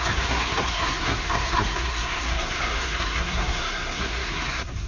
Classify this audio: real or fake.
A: fake